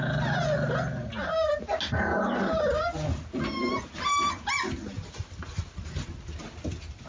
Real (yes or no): yes